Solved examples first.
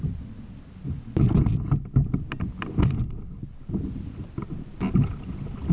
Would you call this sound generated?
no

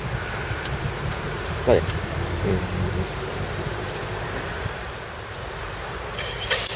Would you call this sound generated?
yes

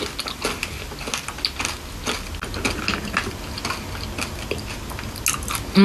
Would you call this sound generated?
no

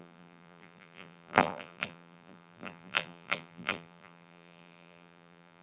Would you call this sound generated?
yes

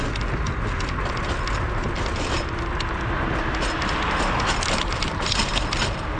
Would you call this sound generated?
no